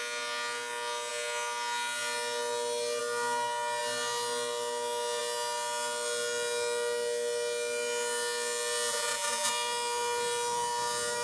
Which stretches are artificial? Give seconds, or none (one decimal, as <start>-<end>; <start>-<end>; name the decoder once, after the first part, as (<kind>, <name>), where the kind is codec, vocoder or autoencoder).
8.9-9.5 (vocoder, Vocos)